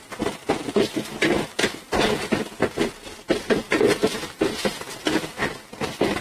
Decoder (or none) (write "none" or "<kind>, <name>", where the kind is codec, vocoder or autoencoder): none